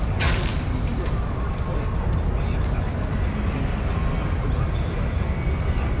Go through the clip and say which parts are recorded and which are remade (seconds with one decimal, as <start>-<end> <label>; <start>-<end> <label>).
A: 0.0-6.0 recorded